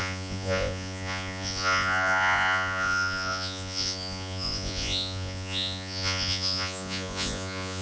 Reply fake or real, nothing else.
fake